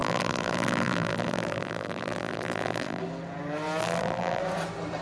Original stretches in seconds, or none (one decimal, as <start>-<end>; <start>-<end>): 3.0-3.8; 4.4-5.0